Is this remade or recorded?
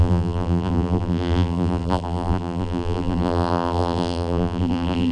remade